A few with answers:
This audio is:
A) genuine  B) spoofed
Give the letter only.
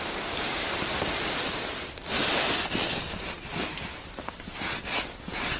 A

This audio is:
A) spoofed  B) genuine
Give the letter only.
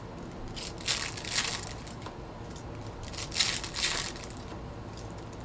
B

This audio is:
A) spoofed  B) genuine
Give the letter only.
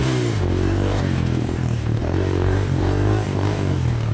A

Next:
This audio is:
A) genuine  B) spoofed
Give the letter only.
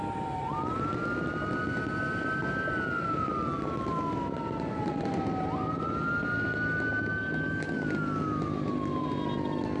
A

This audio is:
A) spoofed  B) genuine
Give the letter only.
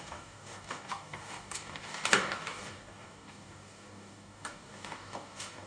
A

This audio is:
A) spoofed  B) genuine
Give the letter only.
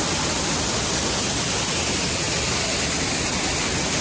B